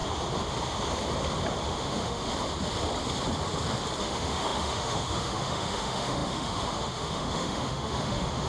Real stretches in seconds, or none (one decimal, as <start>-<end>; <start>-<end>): 0.0-1.6; 2.3-4.0